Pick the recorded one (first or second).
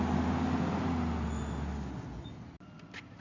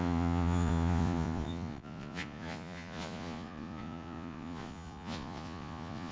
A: first